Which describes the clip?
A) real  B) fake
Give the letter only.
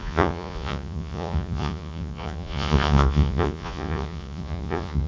B